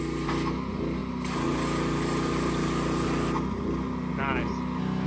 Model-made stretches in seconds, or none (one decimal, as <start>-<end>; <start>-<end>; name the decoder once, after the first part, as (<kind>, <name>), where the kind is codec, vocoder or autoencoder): none